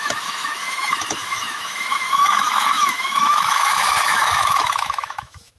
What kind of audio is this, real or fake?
fake